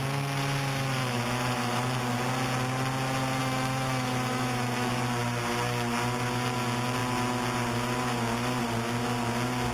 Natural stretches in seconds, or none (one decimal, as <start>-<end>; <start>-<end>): 0.0-1.0; 2.0-3.4; 4.9-9.7